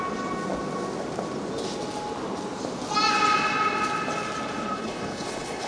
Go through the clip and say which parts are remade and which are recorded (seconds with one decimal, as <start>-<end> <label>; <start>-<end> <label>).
0.0-4.7 recorded; 4.7-5.7 remade

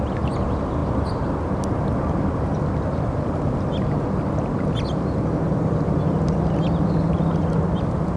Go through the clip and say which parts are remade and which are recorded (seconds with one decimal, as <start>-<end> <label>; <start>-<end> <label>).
0.0-8.2 recorded

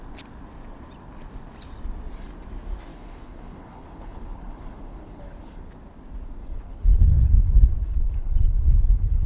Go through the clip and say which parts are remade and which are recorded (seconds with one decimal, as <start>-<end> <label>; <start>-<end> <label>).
0.0-2.9 recorded; 2.9-5.6 remade; 5.6-6.4 recorded; 6.4-9.3 remade

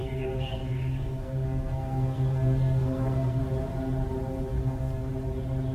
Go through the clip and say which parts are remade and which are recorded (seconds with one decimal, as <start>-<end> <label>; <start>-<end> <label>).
0.0-3.4 remade; 3.4-4.5 recorded; 4.5-5.1 remade; 5.1-5.7 recorded

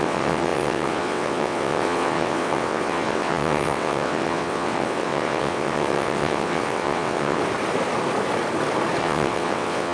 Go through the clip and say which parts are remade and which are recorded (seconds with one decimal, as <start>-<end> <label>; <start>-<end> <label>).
0.0-7.4 remade; 7.4-9.0 recorded; 9.0-9.9 remade

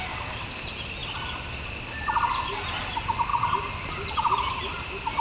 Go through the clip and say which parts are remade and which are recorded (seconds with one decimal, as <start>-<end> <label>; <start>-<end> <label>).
0.0-5.2 recorded